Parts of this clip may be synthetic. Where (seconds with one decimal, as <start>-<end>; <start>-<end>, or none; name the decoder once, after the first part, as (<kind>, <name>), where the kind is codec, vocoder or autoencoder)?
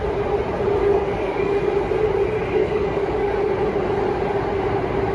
0.9-1.6 (codec, DAC); 2.6-3.5